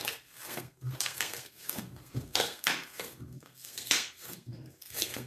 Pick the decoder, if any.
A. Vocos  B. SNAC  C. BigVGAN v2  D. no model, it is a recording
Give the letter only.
B